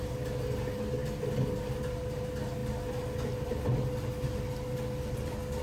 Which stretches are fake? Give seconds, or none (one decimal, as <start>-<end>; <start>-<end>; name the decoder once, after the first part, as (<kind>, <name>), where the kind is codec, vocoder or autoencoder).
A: none